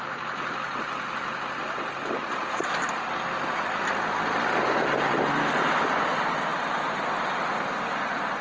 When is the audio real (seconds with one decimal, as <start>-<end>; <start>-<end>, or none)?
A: 0.0-8.4